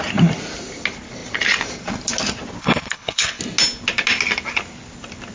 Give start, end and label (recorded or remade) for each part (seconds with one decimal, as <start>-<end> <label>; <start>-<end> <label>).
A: 0.0-2.6 recorded; 2.6-3.4 remade; 3.4-5.3 recorded